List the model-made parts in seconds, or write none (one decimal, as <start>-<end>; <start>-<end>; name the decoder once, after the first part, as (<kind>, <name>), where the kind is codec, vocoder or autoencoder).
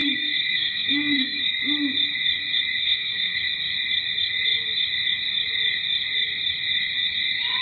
0.0-1.6 (codec, SNAC); 2.8-3.4